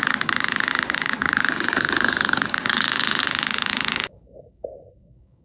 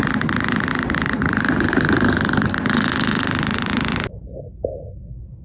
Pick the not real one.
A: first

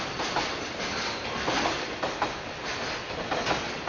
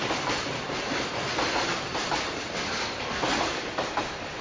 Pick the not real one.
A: second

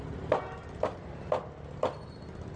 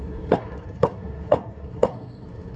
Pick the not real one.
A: second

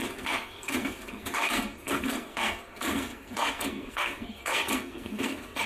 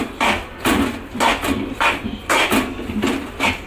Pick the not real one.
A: first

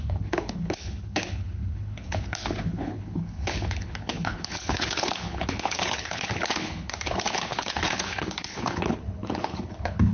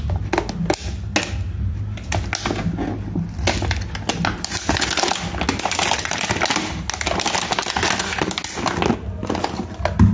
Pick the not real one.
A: first